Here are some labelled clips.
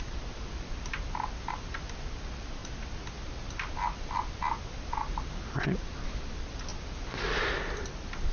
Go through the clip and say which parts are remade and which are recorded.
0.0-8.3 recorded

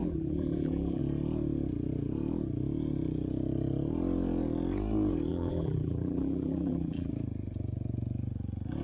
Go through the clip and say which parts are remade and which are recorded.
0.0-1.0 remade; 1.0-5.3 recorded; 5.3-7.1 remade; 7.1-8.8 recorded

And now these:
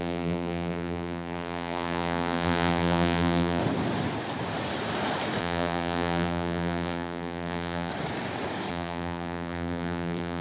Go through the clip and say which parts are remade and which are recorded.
0.0-3.6 remade; 3.6-5.4 recorded; 5.4-7.9 remade; 7.9-8.7 recorded; 8.7-10.4 remade

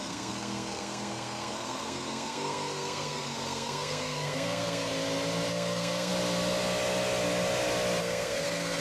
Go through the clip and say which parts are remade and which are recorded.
0.0-4.9 remade; 4.9-5.5 recorded; 5.5-6.1 remade; 6.1-8.0 recorded; 8.0-8.8 remade